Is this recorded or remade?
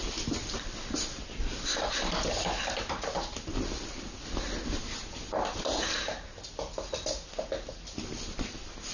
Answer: remade